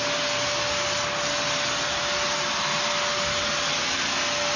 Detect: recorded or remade recorded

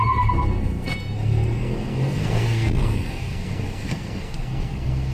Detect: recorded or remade remade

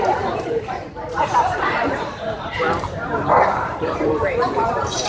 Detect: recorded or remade remade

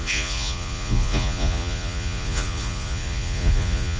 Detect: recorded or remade remade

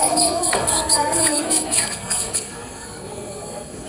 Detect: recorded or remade remade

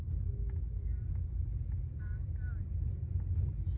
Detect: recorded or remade recorded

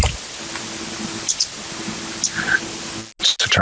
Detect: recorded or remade recorded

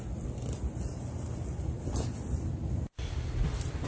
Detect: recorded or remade recorded